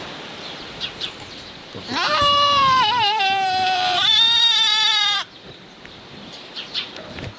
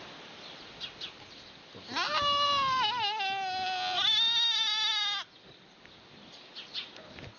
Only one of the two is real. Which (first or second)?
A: second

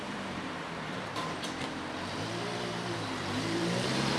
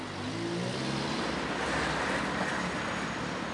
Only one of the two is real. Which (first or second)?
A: second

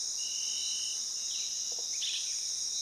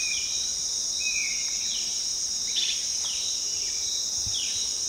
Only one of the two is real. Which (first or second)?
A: first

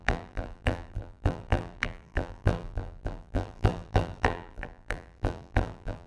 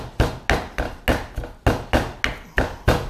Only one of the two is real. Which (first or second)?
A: second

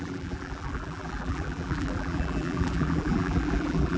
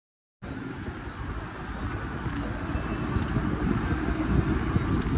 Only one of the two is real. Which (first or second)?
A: second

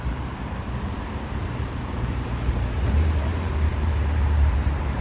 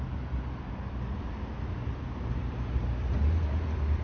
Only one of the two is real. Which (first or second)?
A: second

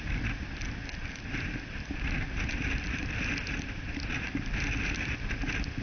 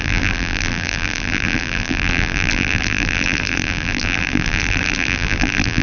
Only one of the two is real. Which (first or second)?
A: first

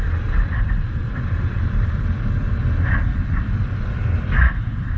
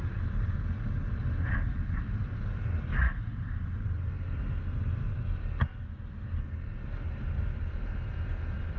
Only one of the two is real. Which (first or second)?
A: second